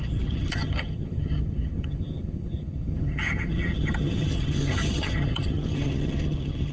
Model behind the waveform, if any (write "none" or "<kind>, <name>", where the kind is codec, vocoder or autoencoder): vocoder, HiFi-GAN